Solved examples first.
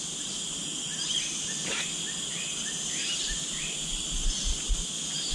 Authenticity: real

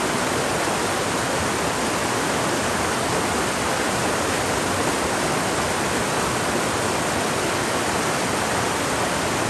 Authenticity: real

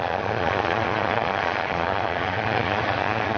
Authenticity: fake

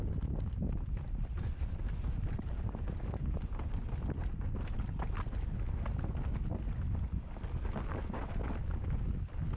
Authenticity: real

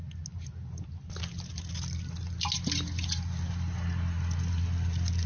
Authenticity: real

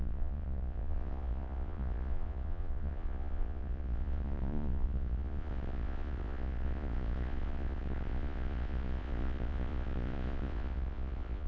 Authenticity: fake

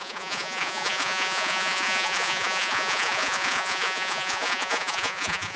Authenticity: fake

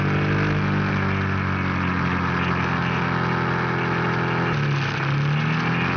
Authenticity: real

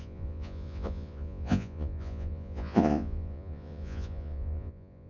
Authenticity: fake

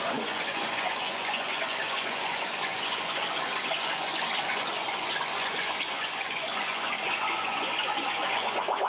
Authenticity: fake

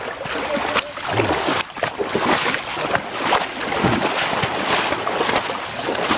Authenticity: real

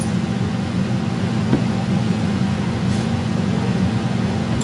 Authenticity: fake